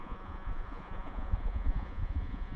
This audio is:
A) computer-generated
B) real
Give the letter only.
A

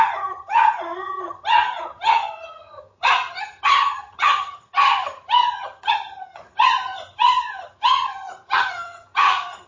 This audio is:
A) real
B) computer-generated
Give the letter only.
B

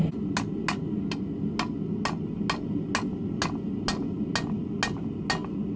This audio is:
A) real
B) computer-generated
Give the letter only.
A